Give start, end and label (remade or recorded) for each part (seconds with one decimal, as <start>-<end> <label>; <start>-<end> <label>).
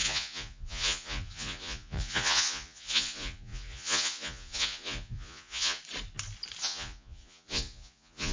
0.0-5.8 remade; 5.8-6.6 recorded; 6.6-8.3 remade